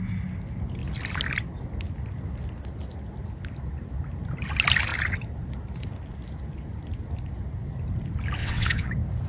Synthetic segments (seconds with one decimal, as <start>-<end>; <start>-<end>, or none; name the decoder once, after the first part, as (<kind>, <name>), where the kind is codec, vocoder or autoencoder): 8.4-8.9 (vocoder, WaveNeXt)

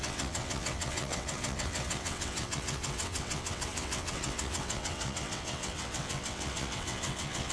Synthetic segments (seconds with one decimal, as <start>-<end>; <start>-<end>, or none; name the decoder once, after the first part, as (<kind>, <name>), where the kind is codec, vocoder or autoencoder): 0.0-7.5 (vocoder, WaveNeXt)

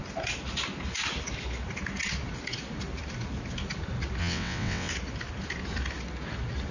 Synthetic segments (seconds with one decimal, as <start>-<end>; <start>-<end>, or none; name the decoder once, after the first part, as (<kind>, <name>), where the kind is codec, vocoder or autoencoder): 4.2-4.9 (vocoder, WaveNeXt)